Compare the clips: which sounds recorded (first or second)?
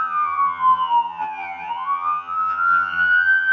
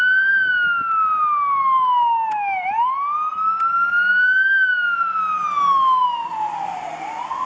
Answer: second